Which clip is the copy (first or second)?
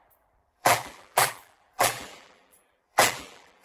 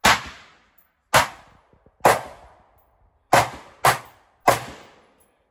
first